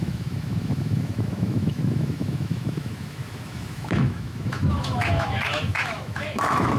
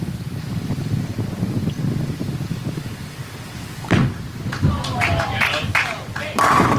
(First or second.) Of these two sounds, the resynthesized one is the first